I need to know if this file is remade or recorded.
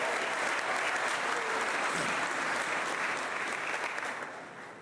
recorded